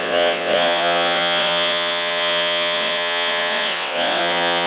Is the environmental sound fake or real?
fake